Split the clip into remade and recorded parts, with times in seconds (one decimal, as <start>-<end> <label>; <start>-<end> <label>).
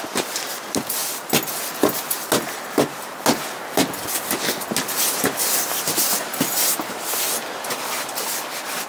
0.0-8.9 recorded